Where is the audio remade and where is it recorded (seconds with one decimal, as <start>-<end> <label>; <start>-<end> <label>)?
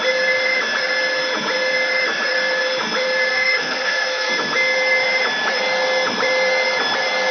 0.0-3.3 recorded; 3.3-4.3 remade; 4.3-7.3 recorded